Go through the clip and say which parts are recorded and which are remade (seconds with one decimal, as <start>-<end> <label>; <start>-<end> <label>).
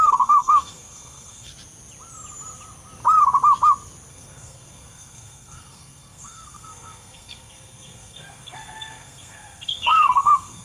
0.0-1.5 remade; 1.5-4.1 recorded; 4.1-10.6 remade